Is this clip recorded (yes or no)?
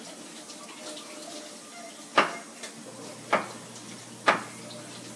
yes